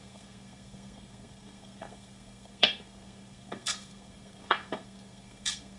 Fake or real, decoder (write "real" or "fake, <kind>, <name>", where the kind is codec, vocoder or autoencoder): fake, codec, SNAC